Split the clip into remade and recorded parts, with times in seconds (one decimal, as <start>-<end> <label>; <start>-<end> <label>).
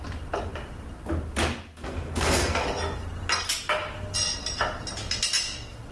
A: 0.0-1.8 recorded; 1.8-2.6 remade; 2.6-5.9 recorded